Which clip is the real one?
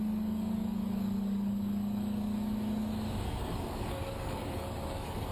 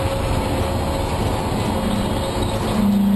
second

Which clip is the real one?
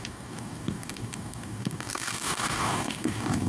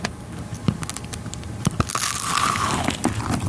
second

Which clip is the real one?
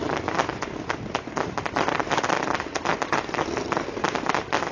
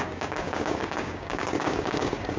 first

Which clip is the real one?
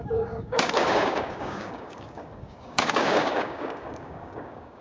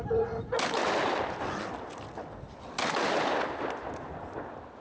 second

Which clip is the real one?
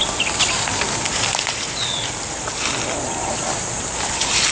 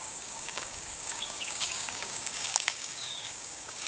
first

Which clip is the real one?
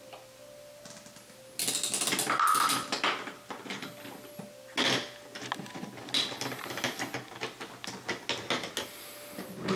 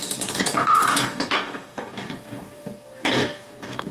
first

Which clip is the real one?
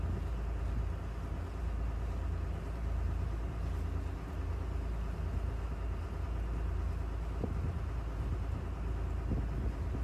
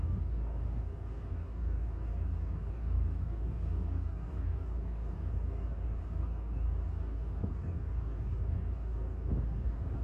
first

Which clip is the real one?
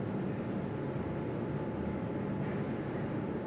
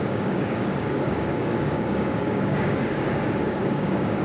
first